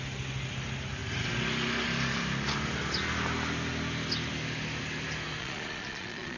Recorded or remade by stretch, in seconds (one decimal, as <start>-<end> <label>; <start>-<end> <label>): 0.0-5.4 recorded; 5.4-6.4 remade